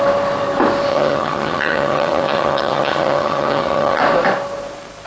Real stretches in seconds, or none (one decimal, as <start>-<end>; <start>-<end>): 0.0-0.9; 4.0-5.1